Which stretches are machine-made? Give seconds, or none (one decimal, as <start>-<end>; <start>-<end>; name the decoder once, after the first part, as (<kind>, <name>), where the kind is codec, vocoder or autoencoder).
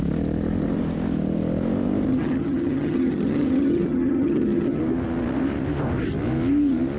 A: 2.1-4.8 (vocoder, HiFi-GAN)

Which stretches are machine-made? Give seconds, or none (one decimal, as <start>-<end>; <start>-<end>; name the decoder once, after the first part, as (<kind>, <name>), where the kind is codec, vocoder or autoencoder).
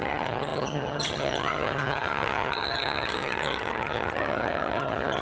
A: 0.0-5.2 (vocoder, HiFi-GAN)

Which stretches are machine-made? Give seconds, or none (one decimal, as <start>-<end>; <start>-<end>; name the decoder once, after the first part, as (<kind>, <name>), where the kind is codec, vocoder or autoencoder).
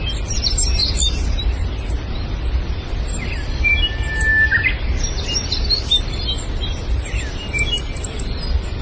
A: none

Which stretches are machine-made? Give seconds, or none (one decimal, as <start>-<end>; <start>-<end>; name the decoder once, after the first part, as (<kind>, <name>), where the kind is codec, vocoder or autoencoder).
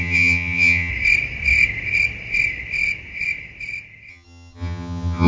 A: 0.0-0.9 (vocoder, HiFi-GAN); 4.1-5.3